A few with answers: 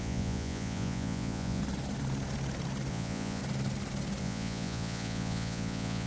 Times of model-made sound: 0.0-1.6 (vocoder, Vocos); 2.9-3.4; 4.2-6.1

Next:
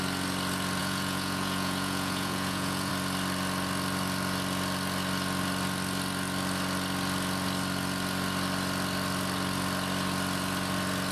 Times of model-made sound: 0.8-2.9 (vocoder, Vocos)